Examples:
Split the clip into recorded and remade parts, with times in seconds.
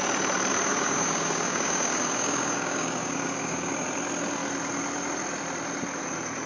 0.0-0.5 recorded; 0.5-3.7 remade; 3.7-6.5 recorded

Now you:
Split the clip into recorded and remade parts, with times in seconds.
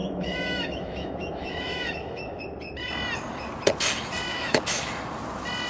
0.0-2.4 remade; 2.4-4.3 recorded; 4.3-4.9 remade; 4.9-5.7 recorded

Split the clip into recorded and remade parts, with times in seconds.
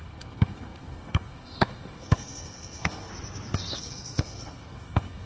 0.0-3.1 remade; 3.1-3.8 recorded; 3.8-5.3 remade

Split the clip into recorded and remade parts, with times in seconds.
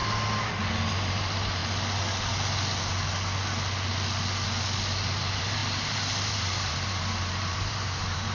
0.0-0.9 recorded; 0.9-1.6 remade; 1.6-5.1 recorded; 5.1-8.3 remade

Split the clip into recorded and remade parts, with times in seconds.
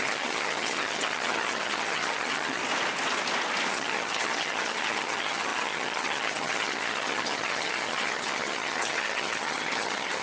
0.0-2.6 remade; 2.6-3.7 recorded; 3.7-10.2 remade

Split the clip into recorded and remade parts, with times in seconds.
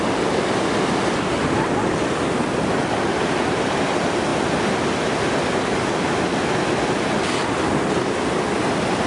0.0-9.1 recorded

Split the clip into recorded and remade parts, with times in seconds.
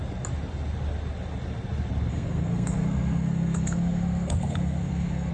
0.0-2.1 recorded; 2.1-5.3 remade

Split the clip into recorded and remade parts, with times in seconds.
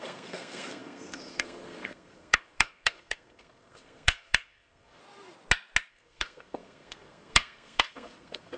0.0-5.0 remade; 5.0-5.9 recorded; 5.9-8.6 remade